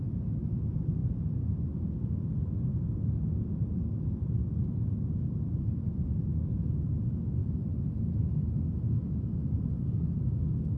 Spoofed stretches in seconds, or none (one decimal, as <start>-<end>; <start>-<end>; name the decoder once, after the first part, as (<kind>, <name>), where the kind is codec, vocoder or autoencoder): none